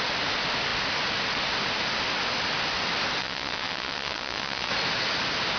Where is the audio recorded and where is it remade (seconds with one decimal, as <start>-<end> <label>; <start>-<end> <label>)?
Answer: 0.0-3.2 recorded; 3.2-4.7 remade; 4.7-5.6 recorded

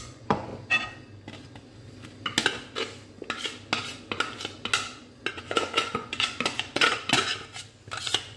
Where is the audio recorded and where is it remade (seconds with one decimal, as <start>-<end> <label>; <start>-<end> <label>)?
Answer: 0.0-0.5 remade; 0.5-5.3 recorded; 5.3-7.3 remade; 7.3-8.0 recorded; 8.0-8.4 remade

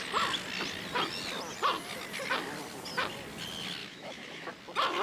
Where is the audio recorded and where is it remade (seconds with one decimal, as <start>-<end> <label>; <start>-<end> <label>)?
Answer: 0.0-3.8 recorded; 3.8-4.5 remade; 4.5-5.0 recorded

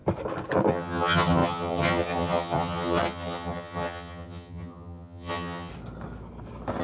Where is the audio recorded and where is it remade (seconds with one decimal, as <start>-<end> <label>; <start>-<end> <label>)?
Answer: 0.0-0.7 recorded; 0.7-5.7 remade; 5.7-6.8 recorded

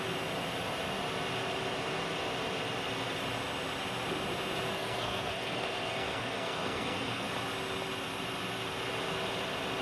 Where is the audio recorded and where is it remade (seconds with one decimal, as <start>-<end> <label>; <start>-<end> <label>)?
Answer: 0.0-4.7 recorded; 4.7-7.3 remade; 7.3-9.8 recorded

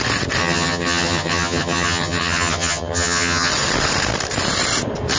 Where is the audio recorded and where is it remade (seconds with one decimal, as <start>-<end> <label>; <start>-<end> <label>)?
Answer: 0.0-0.4 recorded; 0.4-3.5 remade; 3.5-5.2 recorded